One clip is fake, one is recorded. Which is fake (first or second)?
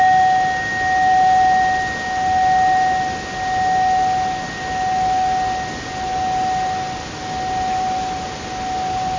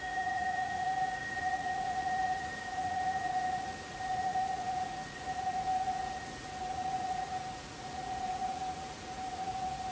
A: second